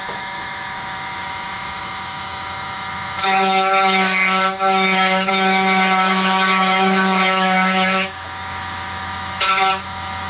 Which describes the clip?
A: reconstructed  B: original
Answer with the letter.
A